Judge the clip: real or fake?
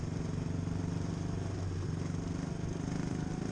real